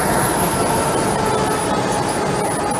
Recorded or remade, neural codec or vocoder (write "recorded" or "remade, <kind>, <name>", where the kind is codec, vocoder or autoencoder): recorded